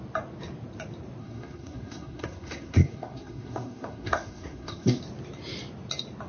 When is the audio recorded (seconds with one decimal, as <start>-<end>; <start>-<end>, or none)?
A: 0.0-1.2; 5.0-6.3